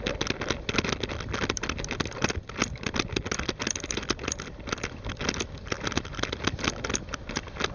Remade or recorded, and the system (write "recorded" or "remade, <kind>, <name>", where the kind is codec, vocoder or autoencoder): recorded